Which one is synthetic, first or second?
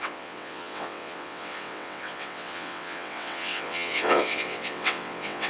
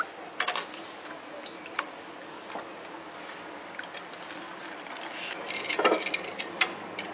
first